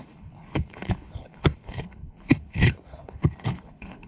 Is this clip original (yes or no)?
no